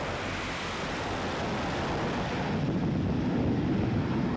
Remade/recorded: recorded